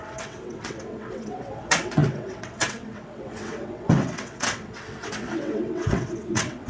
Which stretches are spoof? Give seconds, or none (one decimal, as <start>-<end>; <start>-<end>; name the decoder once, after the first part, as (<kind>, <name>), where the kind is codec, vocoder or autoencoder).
0.0-6.7 (vocoder, WaveNeXt)